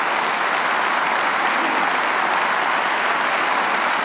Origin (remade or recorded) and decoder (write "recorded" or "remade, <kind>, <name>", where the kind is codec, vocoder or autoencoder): recorded